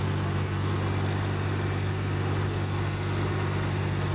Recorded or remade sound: recorded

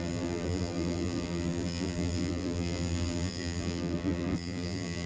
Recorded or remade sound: remade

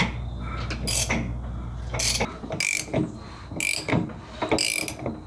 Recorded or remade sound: recorded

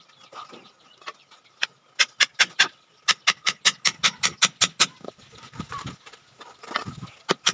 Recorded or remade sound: recorded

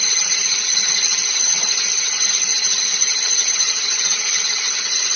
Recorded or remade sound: remade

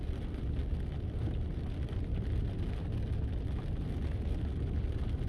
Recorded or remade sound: recorded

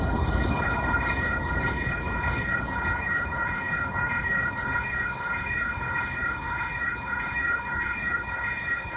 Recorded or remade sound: remade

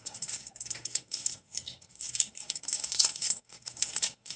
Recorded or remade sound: remade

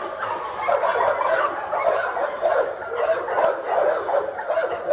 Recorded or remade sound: recorded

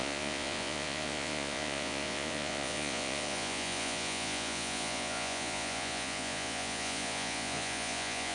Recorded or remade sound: remade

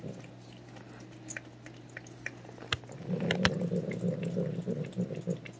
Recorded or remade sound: recorded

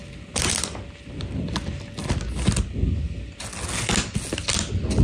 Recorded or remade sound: recorded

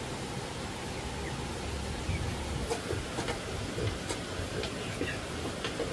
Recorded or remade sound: recorded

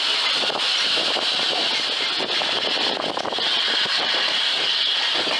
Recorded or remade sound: recorded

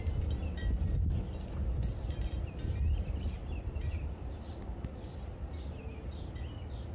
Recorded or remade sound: recorded